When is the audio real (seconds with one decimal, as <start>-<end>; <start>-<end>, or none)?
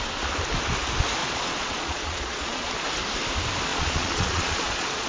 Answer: 0.0-1.2; 2.7-3.7